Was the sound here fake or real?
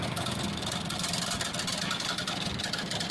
real